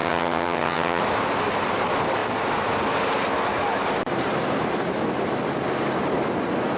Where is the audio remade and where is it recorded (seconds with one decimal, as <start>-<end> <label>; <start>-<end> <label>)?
0.0-1.0 remade; 1.0-6.8 recorded